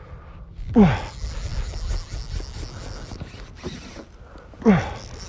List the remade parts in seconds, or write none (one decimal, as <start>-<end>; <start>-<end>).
none